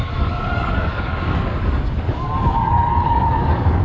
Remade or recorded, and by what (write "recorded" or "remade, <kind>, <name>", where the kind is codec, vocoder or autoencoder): remade, codec, DAC